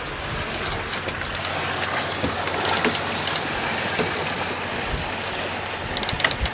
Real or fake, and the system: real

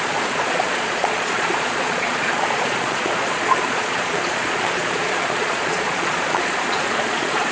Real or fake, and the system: fake, vocoder, Vocos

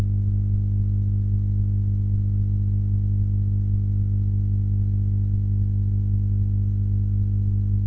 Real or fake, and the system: real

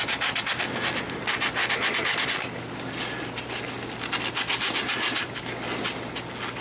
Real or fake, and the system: real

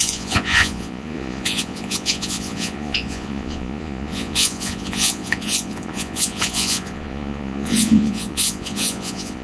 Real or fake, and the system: fake, vocoder, Vocos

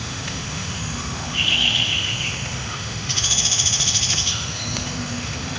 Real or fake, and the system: fake, autoencoder, DAC-VAE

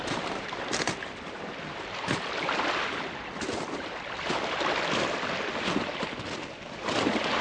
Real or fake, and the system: real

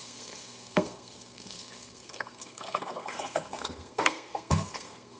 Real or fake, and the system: fake, codec, SNAC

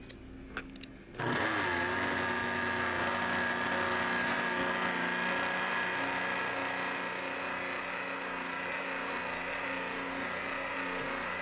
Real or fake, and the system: real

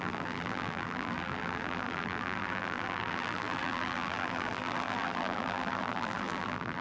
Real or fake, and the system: fake, vocoder, BigVGAN v2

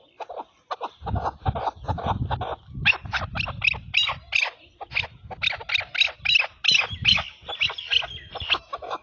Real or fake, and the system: real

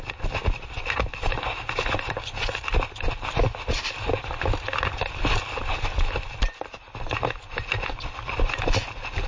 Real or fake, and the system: real